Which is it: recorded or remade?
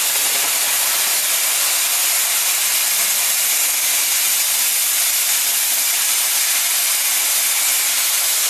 recorded